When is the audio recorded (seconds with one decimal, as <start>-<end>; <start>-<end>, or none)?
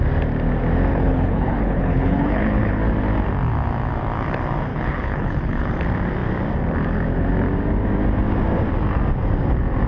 0.0-0.9; 2.8-4.7; 5.7-9.9